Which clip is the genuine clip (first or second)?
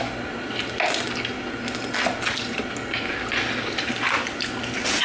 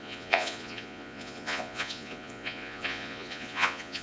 first